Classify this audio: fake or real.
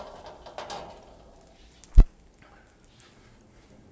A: real